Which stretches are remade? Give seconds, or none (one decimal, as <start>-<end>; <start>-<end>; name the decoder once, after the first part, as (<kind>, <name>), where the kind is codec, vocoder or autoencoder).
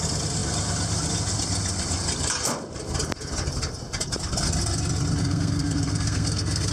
5.2-6.7 (codec, SNAC)